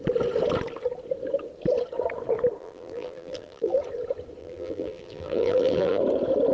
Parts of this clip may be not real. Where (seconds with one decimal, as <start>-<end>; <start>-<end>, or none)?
2.6-3.8; 4.4-6.0